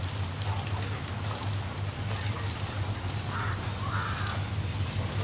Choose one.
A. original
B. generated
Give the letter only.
B